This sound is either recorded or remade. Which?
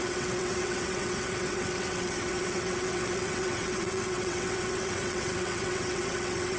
remade